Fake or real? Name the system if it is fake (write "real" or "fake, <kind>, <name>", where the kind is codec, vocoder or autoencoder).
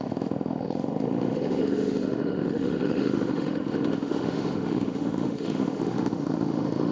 fake, autoencoder, DAC-VAE